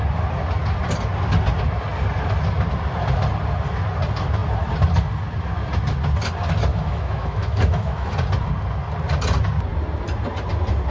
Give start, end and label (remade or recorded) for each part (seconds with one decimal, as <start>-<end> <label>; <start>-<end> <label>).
0.0-6.7 recorded; 6.7-8.1 remade; 8.1-10.9 recorded